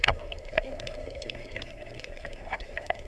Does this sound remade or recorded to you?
remade